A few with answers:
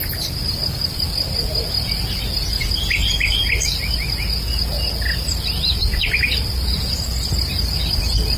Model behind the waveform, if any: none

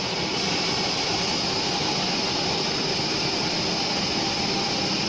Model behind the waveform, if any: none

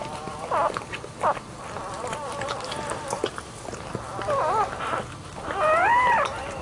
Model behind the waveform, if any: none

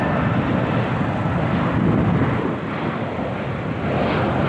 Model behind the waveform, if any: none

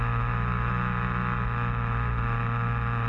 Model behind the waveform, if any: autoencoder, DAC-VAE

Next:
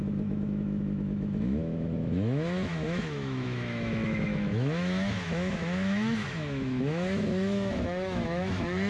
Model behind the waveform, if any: autoencoder, DAC-VAE